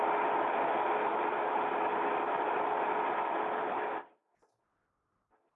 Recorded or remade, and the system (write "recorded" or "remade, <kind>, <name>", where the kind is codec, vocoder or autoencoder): recorded